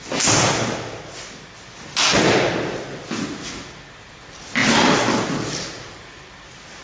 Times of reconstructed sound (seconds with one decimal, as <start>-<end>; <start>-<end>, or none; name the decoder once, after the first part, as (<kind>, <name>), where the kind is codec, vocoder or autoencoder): none